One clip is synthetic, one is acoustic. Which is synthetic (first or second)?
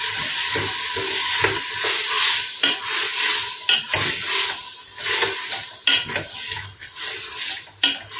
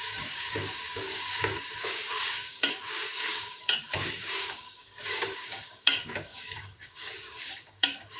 second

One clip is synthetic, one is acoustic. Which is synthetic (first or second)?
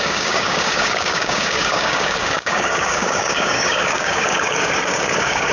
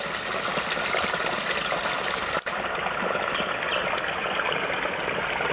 first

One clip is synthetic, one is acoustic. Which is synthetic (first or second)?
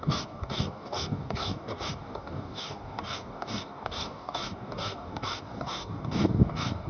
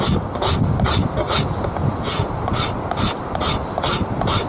first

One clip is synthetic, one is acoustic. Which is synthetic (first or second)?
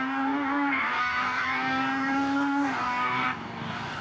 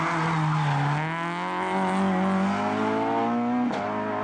first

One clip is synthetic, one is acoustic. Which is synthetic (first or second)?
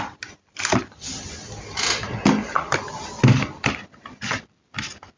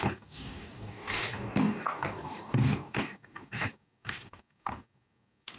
second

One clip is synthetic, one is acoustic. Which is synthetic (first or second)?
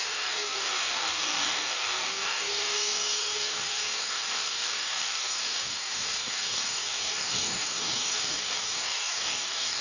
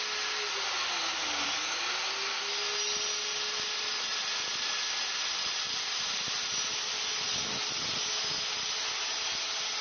first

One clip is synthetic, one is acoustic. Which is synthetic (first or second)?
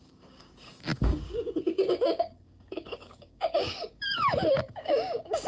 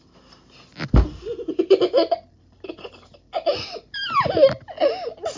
first